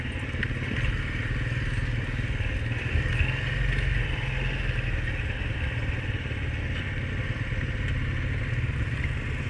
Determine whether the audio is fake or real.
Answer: real